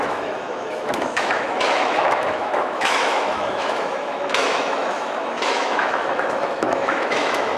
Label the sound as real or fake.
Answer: fake